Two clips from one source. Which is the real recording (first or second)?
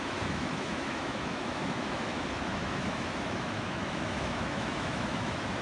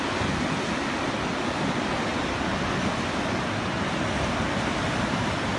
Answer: second